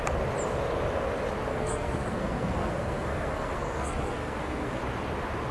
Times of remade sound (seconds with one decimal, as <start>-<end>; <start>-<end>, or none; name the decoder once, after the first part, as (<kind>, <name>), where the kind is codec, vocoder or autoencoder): 1.5-4.8 (codec, SNAC)